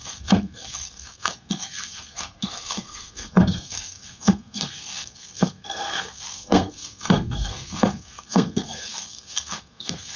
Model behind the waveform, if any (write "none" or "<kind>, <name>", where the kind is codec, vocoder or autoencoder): codec, SNAC